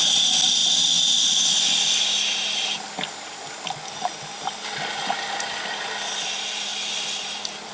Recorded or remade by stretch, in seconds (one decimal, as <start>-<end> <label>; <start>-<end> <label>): 0.0-7.7 recorded